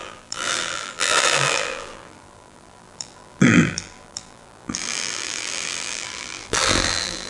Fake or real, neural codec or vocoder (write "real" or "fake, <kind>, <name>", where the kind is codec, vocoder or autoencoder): fake, vocoder, BigVGAN v2